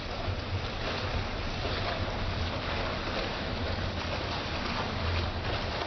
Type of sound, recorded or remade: recorded